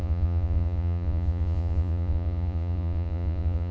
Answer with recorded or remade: remade